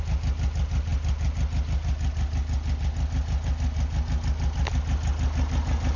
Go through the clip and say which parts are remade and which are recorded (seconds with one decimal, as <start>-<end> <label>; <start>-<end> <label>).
0.0-6.0 recorded